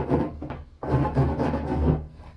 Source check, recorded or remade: remade